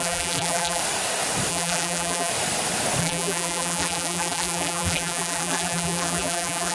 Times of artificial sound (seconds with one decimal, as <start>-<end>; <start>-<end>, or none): 0.0-0.8; 1.5-2.3; 3.0-6.7